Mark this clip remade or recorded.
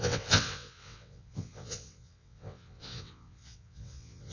remade